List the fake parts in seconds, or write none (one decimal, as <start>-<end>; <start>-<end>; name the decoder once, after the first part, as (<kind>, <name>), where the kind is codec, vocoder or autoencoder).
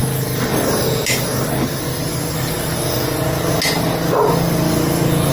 none